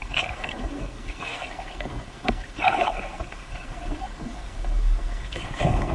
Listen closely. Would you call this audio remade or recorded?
remade